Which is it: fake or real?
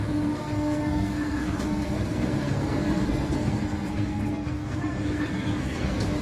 fake